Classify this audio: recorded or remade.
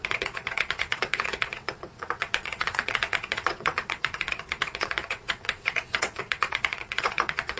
remade